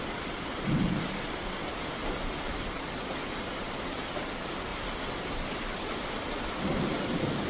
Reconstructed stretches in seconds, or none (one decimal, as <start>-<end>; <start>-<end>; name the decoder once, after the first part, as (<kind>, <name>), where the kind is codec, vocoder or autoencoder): 0.0-2.0 (vocoder, BigVGAN v2); 3.6-4.7; 7.0-7.5